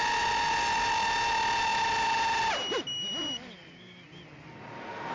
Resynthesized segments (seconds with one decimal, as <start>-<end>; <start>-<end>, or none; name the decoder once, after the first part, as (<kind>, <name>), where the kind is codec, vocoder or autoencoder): none